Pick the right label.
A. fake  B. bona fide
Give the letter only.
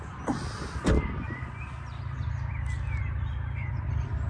B